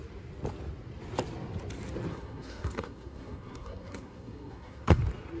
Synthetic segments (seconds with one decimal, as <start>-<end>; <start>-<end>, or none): 2.1-5.0